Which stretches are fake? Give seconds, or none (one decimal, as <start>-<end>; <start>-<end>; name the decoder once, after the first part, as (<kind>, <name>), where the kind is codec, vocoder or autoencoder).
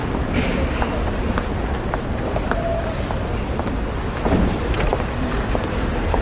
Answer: none